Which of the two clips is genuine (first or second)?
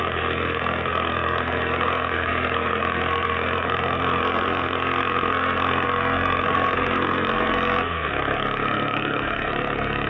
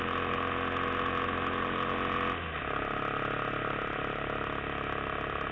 second